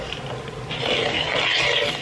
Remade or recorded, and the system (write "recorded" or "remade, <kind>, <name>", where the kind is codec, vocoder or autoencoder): recorded